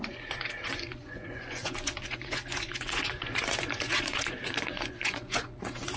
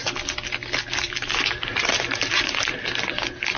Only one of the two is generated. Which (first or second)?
first